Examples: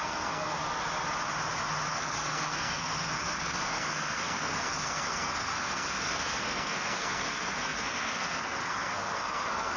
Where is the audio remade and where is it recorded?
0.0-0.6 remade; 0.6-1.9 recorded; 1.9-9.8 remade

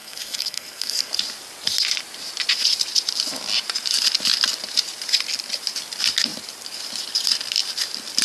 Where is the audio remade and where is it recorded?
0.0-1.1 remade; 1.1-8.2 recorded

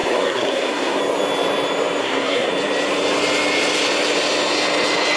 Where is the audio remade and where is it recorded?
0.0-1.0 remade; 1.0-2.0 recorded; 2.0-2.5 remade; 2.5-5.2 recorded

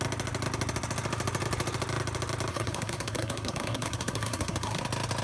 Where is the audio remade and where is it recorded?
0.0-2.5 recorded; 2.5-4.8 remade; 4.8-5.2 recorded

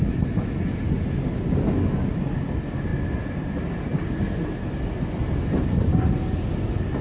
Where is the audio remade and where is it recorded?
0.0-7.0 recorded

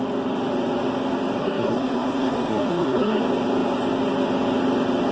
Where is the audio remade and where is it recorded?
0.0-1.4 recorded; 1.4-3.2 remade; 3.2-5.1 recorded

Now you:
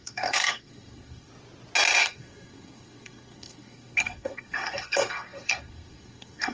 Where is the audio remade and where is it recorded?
0.0-1.3 remade; 1.3-2.0 recorded; 2.0-6.5 remade

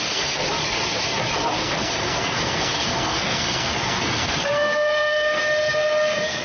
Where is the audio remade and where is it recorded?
0.0-0.4 remade; 0.4-1.6 recorded; 1.6-6.4 remade